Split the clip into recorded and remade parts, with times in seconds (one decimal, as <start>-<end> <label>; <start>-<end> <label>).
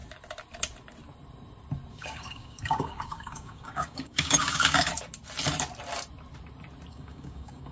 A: 0.0-1.9 recorded; 1.9-4.9 remade; 4.9-6.9 recorded; 6.9-7.7 remade